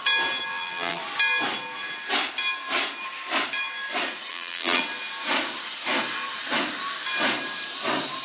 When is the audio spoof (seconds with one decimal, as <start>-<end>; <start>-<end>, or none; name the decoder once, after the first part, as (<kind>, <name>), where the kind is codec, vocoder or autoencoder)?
0.5-1.0 (vocoder, BigVGAN v2); 4.3-4.8